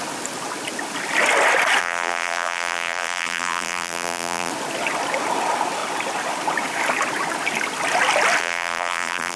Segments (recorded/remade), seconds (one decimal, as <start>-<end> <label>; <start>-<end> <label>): 0.0-1.8 recorded; 1.8-4.5 remade; 4.5-8.4 recorded; 8.4-9.4 remade